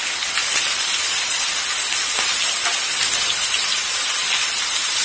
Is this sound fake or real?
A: real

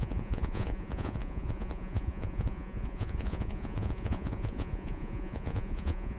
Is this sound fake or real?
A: fake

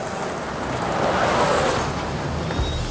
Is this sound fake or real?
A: real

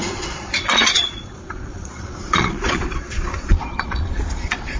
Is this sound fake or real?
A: fake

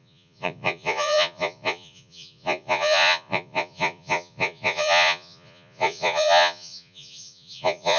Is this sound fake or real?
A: fake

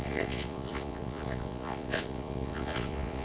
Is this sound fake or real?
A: fake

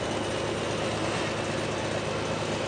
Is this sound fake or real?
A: real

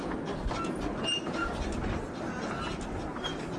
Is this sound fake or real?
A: real